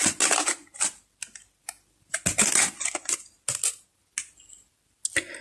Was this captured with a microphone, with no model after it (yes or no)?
yes